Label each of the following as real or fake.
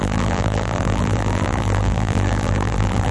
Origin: fake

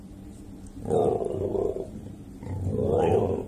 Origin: fake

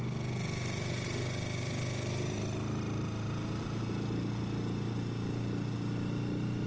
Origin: real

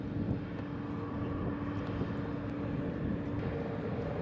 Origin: real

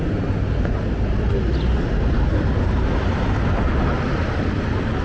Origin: real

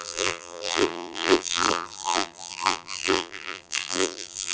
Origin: fake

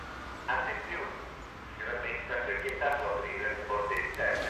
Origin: real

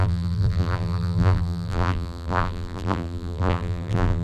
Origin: fake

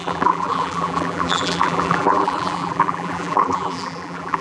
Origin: fake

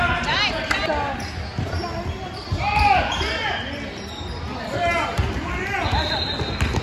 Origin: real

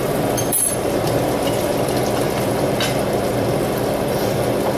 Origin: fake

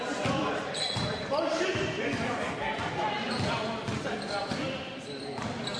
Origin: fake